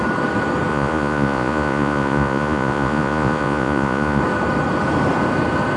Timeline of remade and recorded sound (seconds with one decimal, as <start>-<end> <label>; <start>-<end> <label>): 0.0-0.7 recorded; 0.7-4.2 remade; 4.2-5.8 recorded

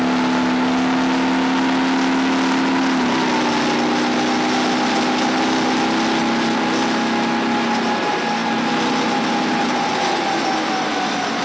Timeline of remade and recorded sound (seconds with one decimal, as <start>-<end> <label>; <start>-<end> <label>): 0.0-11.4 recorded

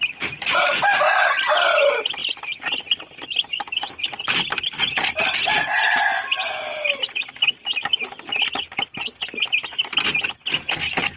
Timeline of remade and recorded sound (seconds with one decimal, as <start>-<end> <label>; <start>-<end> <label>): 0.0-11.2 recorded

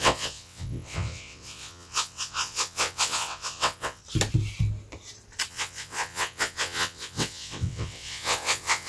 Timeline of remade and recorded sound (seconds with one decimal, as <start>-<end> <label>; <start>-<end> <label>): 0.0-4.0 remade; 4.0-5.5 recorded; 5.5-8.9 remade